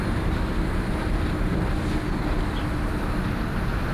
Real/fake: real